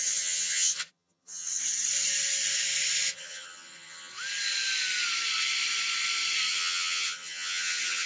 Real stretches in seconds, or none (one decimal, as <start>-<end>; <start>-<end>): 1.5-3.1; 4.1-6.5